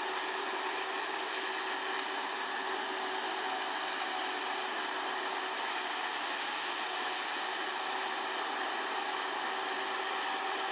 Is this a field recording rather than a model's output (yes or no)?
yes